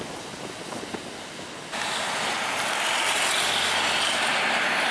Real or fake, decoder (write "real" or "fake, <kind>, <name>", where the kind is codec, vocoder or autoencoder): real